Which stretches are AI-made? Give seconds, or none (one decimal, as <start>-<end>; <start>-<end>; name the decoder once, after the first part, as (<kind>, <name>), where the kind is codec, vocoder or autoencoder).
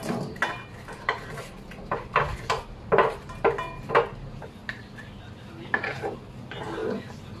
none